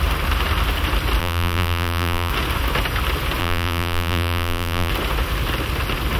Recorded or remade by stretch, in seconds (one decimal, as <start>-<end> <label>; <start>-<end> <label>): 0.0-1.2 recorded; 1.2-2.3 remade; 2.3-3.4 recorded; 3.4-4.9 remade; 4.9-6.2 recorded